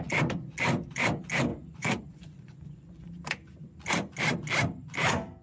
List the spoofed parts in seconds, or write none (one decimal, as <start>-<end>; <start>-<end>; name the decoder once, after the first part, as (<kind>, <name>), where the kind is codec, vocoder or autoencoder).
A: 1.5-3.1 (vocoder, Vocos)